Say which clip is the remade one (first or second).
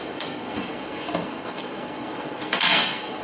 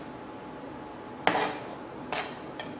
first